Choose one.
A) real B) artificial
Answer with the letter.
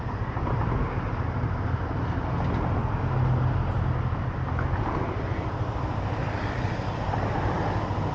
A